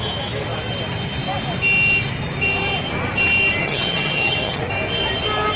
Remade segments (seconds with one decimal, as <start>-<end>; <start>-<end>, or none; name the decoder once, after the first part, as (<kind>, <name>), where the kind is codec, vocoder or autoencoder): 3.6-4.6 (vocoder, HiFi-GAN)